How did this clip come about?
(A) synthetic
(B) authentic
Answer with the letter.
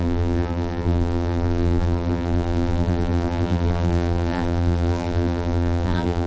A